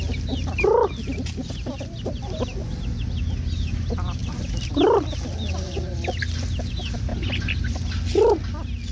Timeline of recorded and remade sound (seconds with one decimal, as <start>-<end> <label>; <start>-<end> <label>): 0.0-8.9 recorded